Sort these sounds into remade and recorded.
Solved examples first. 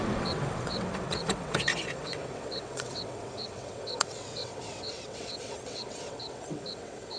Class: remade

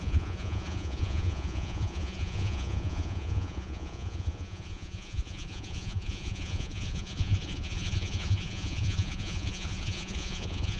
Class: remade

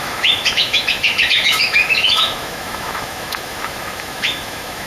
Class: remade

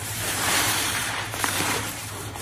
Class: remade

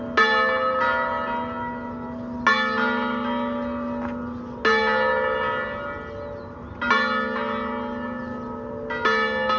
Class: recorded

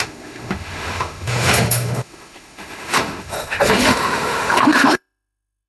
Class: remade